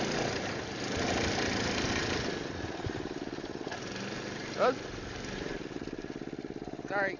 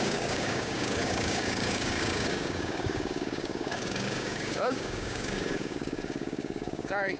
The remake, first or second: second